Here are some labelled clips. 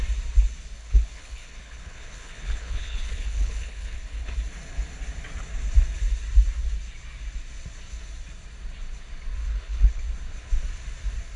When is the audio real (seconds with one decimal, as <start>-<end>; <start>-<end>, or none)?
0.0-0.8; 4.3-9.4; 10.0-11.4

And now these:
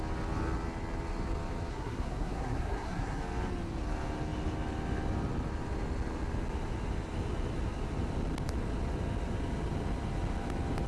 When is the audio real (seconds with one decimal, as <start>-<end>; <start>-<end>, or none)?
0.0-1.7; 3.2-10.9

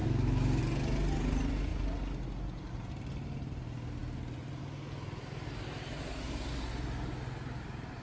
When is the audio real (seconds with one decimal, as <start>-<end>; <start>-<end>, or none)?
0.6-8.0

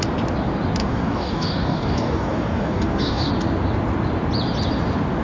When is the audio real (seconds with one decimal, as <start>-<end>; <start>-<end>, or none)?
0.0-0.8; 3.3-5.2